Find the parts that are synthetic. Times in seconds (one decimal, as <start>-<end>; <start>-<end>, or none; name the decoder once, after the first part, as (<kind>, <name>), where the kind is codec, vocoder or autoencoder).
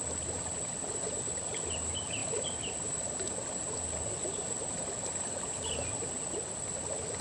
none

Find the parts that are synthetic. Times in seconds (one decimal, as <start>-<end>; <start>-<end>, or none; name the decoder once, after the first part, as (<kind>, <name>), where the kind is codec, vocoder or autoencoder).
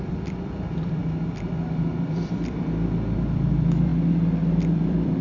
0.0-1.0 (vocoder, BigVGAN v2); 1.9-3.9; 4.8-5.2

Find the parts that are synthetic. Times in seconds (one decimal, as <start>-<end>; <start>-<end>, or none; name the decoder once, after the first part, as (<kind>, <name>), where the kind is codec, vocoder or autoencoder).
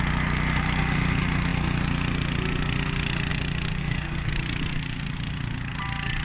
3.8-4.3 (codec, SNAC)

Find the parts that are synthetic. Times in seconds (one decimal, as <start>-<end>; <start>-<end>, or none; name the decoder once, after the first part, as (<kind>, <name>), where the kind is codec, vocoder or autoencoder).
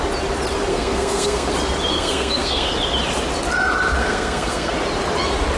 0.7-1.5 (codec, SNAC); 1.9-2.7; 4.0-4.7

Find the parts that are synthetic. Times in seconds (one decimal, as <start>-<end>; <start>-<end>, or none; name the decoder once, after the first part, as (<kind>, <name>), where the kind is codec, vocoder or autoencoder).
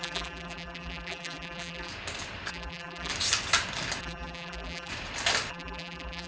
0.0-1.9 (vocoder, BigVGAN v2); 2.5-3.1; 4.0-4.9; 5.5-6.3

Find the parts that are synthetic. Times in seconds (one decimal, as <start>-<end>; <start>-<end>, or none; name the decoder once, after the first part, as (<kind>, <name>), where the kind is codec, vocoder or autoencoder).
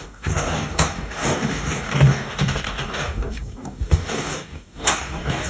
0.0-5.5 (codec, DAC)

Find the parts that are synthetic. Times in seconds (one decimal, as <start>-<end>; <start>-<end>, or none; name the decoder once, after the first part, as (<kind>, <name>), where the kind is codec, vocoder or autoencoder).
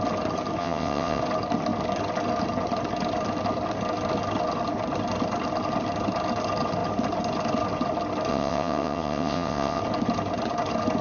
0.6-1.2 (vocoder, WaveNeXt); 8.3-9.8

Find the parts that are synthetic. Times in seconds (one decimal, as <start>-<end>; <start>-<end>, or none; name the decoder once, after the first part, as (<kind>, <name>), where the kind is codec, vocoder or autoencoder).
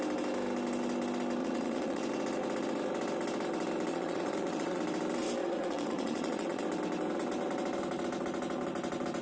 1.4-2.0 (vocoder, Vocos); 3.9-4.8; 5.4-6.6